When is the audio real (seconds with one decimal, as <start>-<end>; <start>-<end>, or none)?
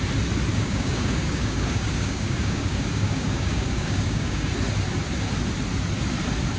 0.0-0.5; 4.5-6.6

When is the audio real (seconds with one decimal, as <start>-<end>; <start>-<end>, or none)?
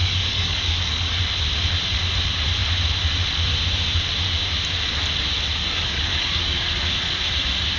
1.2-5.6; 6.7-7.8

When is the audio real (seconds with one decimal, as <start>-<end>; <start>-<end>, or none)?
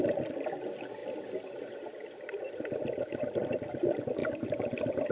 0.0-5.1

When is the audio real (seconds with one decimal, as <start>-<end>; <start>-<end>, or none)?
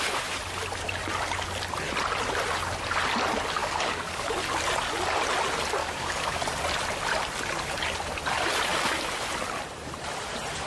0.0-3.6; 4.3-5.8; 6.4-10.7